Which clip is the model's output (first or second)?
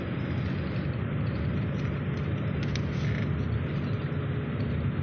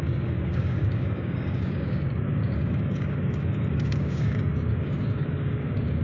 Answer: second